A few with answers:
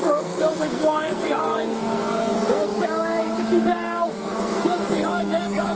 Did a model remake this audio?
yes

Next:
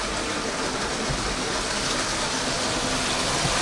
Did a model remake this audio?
no